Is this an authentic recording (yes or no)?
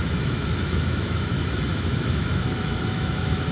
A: no